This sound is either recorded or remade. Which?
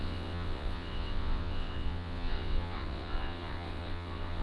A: remade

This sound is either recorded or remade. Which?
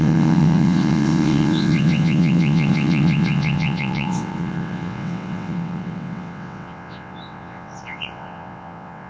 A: remade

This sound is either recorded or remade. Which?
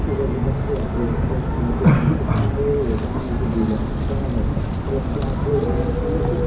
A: recorded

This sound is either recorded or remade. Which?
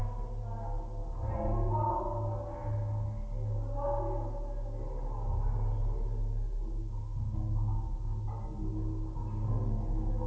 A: recorded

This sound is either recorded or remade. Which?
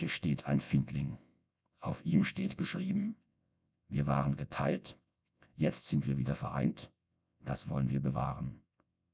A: remade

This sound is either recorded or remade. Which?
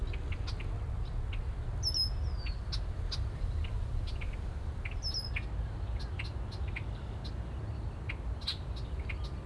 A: recorded